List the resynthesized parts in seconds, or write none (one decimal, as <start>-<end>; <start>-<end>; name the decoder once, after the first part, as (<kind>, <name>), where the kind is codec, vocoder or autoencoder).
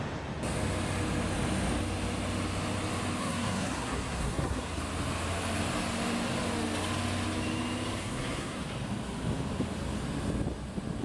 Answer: 3.2-4.8 (codec, SNAC); 8.0-8.6